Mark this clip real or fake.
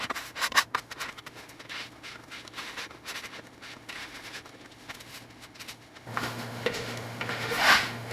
fake